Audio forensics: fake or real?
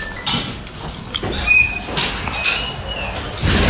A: real